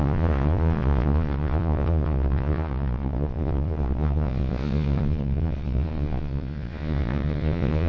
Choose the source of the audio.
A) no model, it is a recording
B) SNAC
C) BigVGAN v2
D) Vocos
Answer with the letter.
D